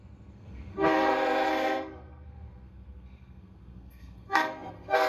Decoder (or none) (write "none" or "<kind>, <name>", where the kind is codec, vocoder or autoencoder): codec, SNAC